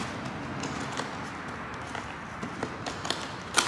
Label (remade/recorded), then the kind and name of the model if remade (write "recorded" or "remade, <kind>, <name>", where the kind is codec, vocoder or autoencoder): recorded